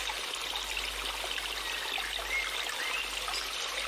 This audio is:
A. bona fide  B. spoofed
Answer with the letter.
A